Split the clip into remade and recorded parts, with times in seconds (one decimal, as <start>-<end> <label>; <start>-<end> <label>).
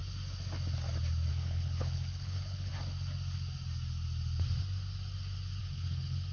0.0-1.3 recorded; 1.3-2.7 remade; 2.7-5.6 recorded; 5.6-6.3 remade